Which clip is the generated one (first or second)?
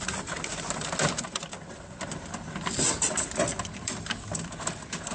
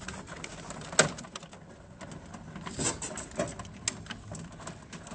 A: first